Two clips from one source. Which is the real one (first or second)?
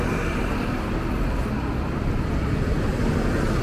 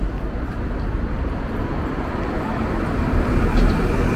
first